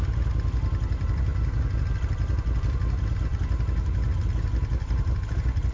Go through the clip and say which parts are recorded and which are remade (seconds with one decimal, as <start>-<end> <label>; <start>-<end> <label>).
0.0-5.7 recorded